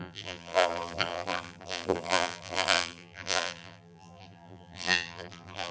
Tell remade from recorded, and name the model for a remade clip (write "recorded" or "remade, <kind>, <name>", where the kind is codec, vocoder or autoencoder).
remade, vocoder, BigVGAN v2